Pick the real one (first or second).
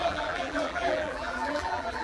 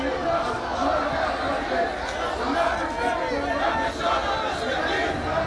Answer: second